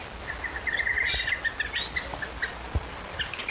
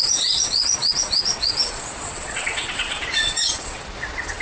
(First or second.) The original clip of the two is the first